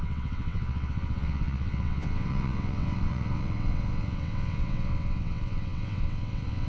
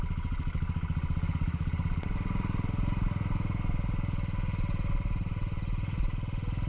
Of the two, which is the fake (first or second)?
first